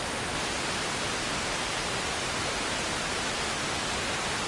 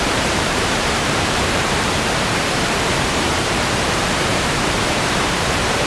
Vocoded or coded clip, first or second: second